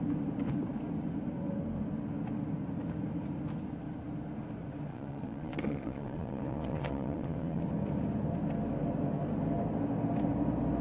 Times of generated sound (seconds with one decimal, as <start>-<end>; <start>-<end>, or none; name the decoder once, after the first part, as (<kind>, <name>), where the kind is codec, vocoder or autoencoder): 4.9-7.6 (vocoder, Vocos)